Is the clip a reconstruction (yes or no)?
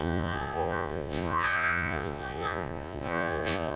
yes